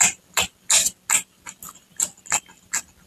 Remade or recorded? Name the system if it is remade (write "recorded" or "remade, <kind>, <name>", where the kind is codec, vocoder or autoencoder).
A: recorded